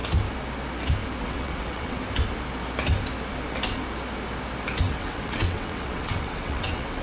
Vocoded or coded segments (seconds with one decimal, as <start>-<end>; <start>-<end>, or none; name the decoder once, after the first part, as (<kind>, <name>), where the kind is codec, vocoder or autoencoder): 1.2-2.0 (vocoder, WaveNeXt); 4.8-7.0